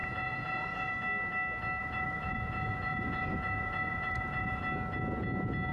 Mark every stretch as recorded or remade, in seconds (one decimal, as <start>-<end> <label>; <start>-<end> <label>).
0.0-0.9 remade; 0.9-1.8 recorded; 1.8-4.6 remade; 4.6-5.7 recorded